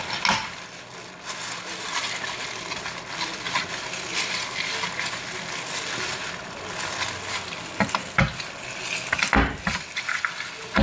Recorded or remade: recorded